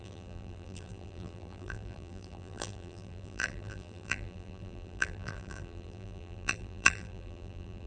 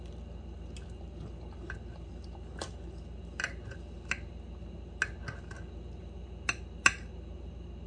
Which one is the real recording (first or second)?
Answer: second